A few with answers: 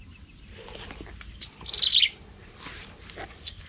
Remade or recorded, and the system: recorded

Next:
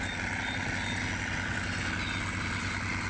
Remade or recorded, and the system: recorded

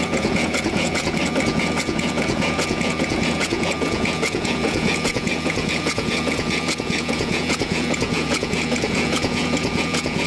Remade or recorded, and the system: remade, vocoder, Vocos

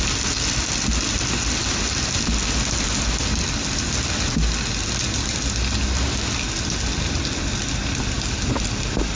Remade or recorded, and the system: recorded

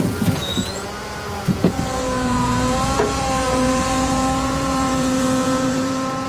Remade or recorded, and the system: remade, vocoder, Vocos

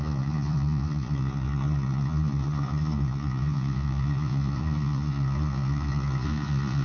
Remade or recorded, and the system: remade, vocoder, Vocos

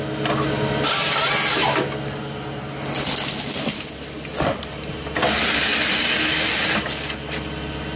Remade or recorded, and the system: recorded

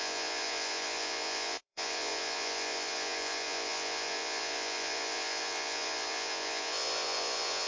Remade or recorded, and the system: remade, vocoder, Vocos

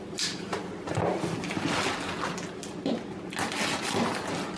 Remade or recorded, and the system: recorded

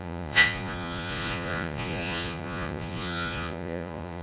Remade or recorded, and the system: remade, vocoder, Vocos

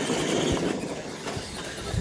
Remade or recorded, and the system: recorded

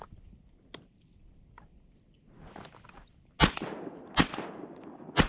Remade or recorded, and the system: recorded